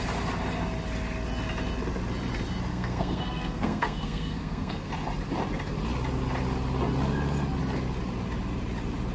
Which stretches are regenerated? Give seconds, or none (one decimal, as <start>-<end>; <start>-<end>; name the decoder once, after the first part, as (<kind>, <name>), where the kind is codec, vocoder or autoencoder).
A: 2.7-4.9 (codec, SNAC)